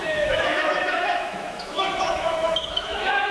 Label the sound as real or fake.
fake